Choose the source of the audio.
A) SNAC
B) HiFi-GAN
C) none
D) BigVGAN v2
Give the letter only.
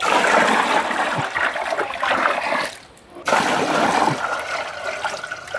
D